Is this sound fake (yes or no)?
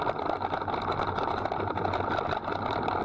no